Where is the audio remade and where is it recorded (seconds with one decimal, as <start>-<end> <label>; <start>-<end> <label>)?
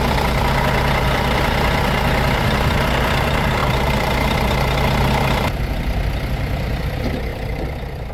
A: 0.0-8.1 remade